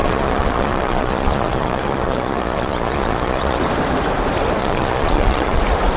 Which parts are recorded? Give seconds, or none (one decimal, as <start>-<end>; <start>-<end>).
3.6-4.6; 5.6-6.0